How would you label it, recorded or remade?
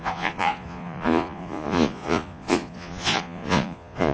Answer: remade